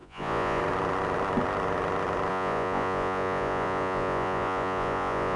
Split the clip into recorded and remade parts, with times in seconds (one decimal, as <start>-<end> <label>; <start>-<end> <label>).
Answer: 0.0-0.6 remade; 0.6-2.3 recorded; 2.3-5.4 remade